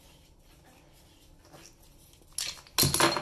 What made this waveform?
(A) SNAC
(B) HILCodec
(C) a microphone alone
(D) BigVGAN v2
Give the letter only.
C